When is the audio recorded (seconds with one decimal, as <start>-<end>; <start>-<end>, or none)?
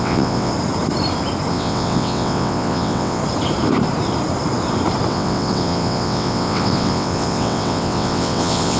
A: 0.5-1.5; 3.2-5.1